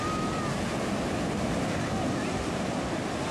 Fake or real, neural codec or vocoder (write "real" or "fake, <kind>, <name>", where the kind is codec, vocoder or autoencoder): real